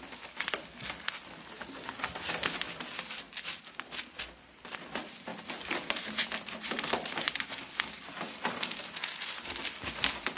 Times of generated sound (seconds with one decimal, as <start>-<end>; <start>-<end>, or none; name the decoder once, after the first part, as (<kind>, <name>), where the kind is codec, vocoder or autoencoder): 5.3-9.0 (vocoder, BigVGAN v2)